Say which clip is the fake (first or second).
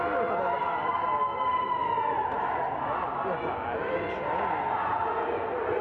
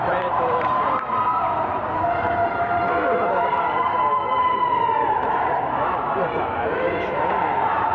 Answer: second